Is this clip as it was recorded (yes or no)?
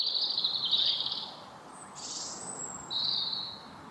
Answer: no